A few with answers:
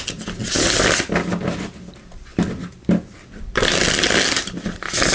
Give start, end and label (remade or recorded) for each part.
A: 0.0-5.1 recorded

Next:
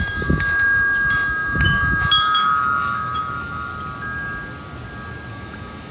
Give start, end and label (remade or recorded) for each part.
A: 0.0-3.7 remade; 3.7-5.3 recorded; 5.3-5.9 remade

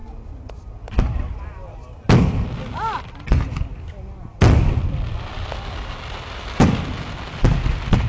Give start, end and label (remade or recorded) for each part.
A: 0.0-8.1 recorded

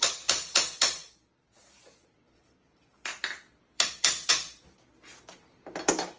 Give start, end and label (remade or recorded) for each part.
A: 0.0-1.0 recorded; 1.0-4.3 remade; 4.3-6.2 recorded

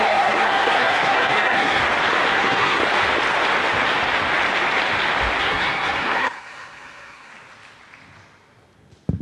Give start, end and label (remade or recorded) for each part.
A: 0.0-1.8 remade; 1.8-2.3 recorded; 2.3-2.8 remade; 2.8-5.4 recorded; 5.4-7.3 remade; 7.3-9.2 recorded